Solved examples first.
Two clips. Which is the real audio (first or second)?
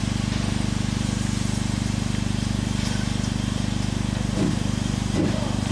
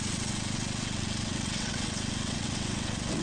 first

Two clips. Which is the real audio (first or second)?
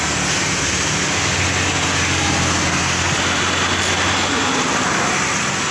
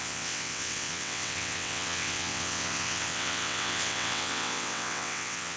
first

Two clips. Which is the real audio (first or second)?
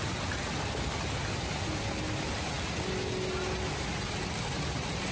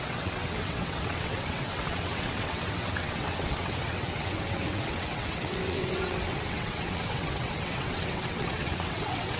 first